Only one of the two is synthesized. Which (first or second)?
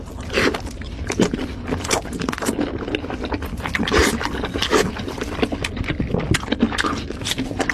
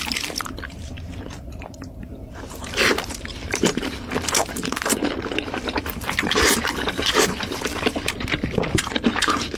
second